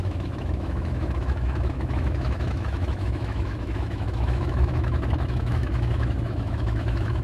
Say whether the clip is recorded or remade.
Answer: remade